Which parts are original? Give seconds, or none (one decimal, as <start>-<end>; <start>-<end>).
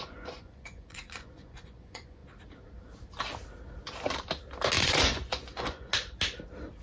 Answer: 2.2-4.8; 5.9-6.8